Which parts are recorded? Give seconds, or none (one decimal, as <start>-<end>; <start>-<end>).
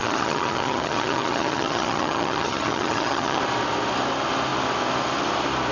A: 3.4-5.7